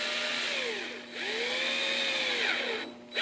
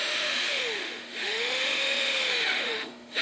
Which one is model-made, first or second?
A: second